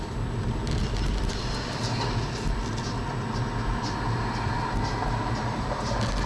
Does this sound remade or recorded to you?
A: recorded